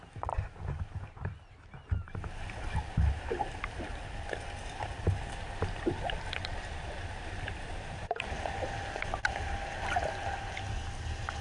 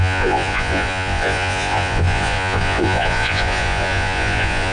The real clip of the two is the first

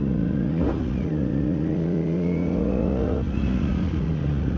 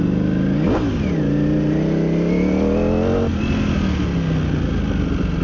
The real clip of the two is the second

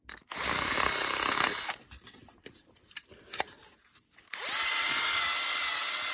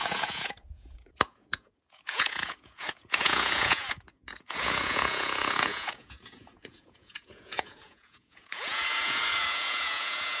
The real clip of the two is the first